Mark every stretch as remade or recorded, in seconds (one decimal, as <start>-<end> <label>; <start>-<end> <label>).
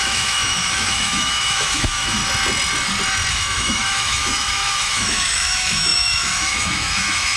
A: 0.0-2.2 remade; 2.2-3.3 recorded; 3.3-7.4 remade